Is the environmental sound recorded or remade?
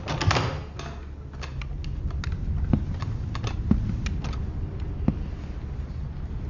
recorded